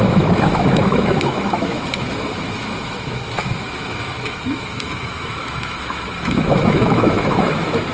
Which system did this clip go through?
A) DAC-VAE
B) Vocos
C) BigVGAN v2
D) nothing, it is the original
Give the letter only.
A